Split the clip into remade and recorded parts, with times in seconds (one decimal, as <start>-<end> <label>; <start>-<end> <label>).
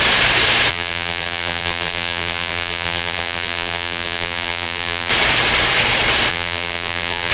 0.0-0.7 recorded; 0.7-5.1 remade; 5.1-6.3 recorded; 6.3-7.3 remade